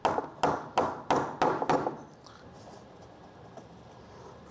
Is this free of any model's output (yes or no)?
yes